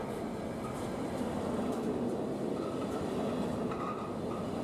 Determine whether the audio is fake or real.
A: real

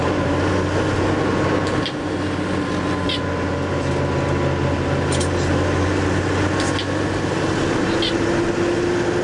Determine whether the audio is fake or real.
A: real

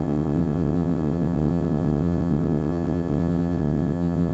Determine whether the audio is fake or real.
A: fake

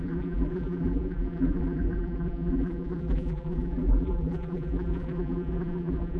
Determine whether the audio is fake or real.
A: fake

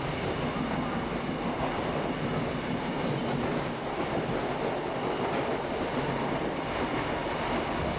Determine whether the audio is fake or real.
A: real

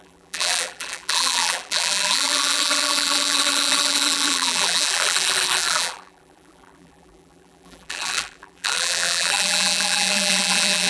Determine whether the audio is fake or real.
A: fake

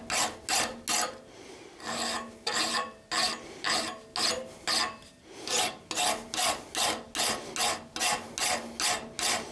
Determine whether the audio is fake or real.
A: real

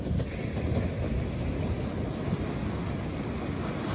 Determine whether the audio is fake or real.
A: real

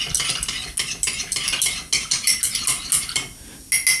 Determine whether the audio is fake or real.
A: real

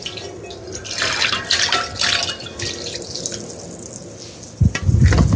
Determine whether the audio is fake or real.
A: real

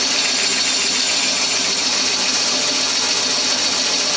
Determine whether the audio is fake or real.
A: real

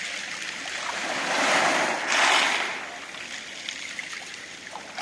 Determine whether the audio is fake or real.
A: real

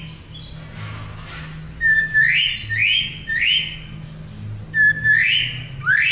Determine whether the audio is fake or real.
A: real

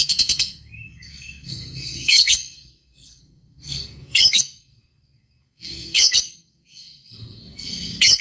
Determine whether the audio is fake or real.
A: fake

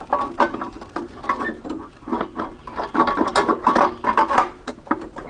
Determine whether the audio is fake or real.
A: real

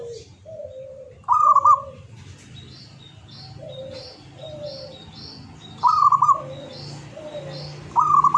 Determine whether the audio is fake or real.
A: real